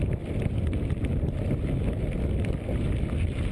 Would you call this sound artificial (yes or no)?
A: no